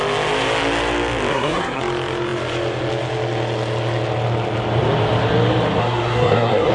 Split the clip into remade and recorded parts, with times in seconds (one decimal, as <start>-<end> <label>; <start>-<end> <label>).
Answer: 0.0-1.3 recorded; 1.3-1.8 remade; 1.8-5.8 recorded; 5.8-6.7 remade